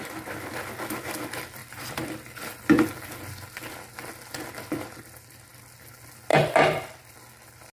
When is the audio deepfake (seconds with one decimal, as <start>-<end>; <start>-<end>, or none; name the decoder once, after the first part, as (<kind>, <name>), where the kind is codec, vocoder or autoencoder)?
1.6-2.6 (vocoder, BigVGAN v2); 6.3-7.0